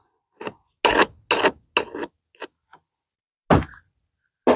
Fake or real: real